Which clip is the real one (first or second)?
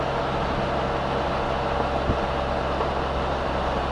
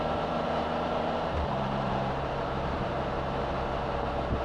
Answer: first